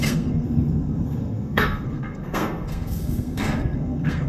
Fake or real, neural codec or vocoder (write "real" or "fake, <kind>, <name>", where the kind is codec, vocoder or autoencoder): fake, codec, SNAC